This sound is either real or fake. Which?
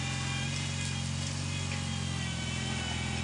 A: real